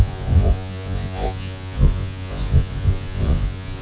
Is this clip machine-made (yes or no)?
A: yes